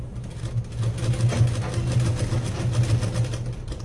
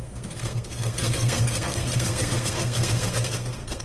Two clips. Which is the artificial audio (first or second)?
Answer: second